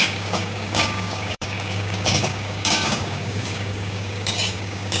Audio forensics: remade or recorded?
remade